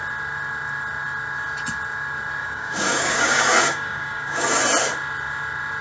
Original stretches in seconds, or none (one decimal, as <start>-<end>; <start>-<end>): 0.0-2.4; 4.6-5.8